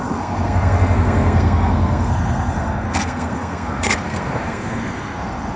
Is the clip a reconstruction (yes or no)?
yes